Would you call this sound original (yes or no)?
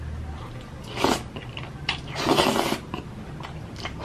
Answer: no